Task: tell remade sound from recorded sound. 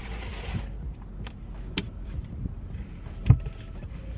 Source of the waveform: remade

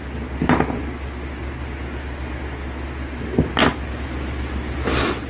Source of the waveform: recorded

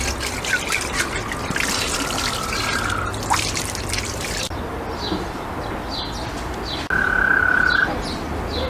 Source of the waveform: recorded